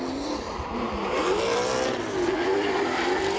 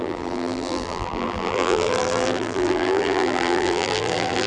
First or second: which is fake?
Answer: second